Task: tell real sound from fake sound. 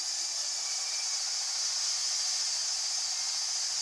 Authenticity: real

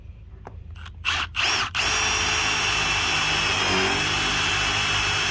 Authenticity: real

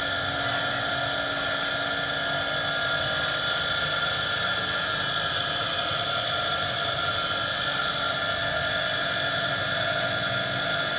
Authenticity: real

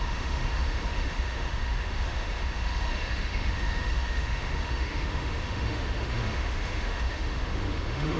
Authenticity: fake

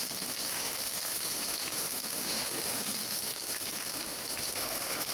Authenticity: fake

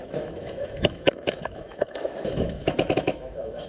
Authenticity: fake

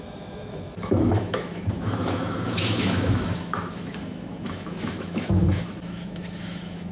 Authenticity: fake